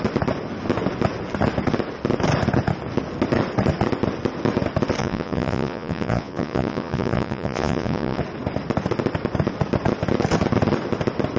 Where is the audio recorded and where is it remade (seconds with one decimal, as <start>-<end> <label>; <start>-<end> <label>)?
0.0-5.0 recorded; 5.0-8.2 remade; 8.2-11.4 recorded